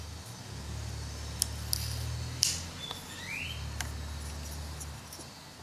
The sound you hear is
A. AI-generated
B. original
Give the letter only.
B